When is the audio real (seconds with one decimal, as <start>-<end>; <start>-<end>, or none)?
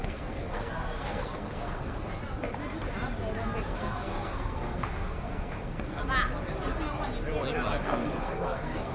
2.2-3.6; 6.0-7.8